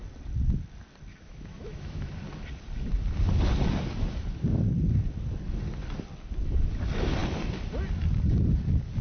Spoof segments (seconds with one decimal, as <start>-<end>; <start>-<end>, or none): 1.1-2.1